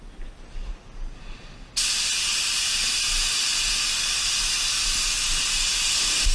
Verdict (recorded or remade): recorded